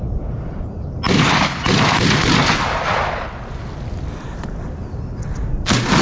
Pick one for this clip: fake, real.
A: real